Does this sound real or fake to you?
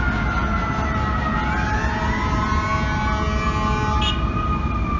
real